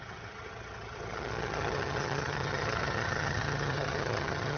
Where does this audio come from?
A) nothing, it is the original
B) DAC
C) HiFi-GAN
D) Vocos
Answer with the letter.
C